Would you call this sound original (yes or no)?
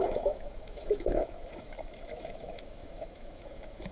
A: no